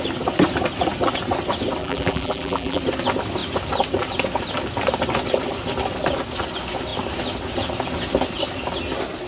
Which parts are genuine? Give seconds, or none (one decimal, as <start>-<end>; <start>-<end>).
0.0-1.8; 2.8-9.3